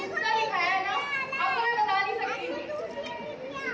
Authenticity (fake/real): real